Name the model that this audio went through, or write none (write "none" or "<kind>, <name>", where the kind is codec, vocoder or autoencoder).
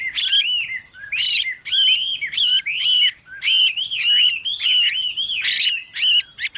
none